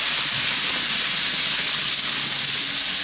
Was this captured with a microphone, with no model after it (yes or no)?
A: yes